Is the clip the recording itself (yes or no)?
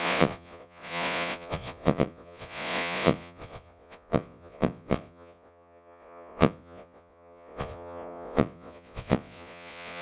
no